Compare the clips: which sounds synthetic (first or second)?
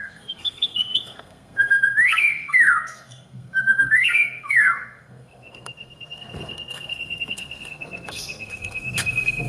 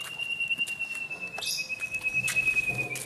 first